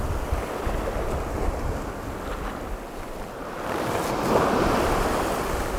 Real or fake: real